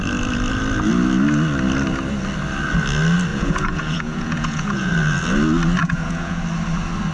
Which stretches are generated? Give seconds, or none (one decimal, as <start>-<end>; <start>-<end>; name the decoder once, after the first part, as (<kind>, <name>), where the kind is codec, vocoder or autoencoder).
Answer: 3.3-4.9 (vocoder, Vocos); 5.8-6.4